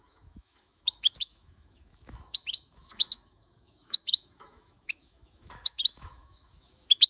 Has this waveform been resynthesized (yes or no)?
yes